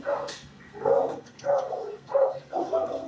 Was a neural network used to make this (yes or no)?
yes